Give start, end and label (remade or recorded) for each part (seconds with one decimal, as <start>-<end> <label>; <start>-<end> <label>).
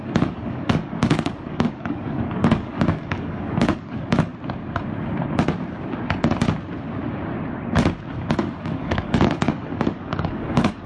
0.0-4.3 remade; 4.3-8.2 recorded; 8.2-10.9 remade